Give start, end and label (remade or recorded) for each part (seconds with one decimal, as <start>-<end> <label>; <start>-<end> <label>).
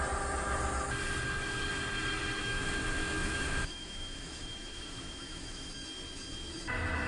0.0-2.4 recorded; 2.4-5.7 remade; 5.7-7.1 recorded